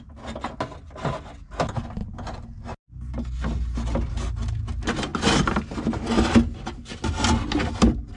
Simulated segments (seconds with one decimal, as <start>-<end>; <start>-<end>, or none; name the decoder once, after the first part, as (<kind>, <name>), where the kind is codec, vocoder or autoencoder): none